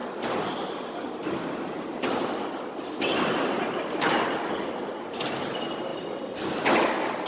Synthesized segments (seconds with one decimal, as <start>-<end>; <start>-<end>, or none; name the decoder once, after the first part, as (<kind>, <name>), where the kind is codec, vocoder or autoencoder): none